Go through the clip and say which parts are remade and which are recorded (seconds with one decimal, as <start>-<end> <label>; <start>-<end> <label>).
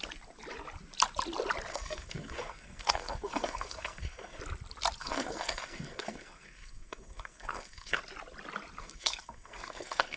0.0-1.7 recorded; 1.7-4.4 remade; 4.4-5.0 recorded; 5.0-8.0 remade; 8.0-8.8 recorded; 8.8-10.2 remade